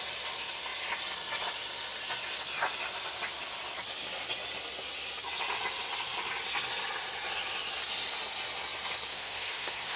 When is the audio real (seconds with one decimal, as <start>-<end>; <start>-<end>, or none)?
0.0-9.1